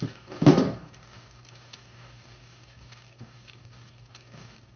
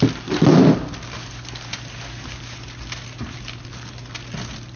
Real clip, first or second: second